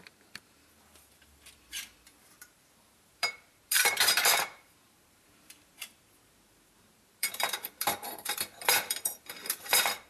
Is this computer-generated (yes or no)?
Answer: yes